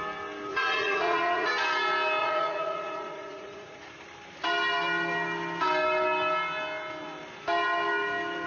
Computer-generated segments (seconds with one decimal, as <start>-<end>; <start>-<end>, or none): 0.5-1.5; 2.2-3.8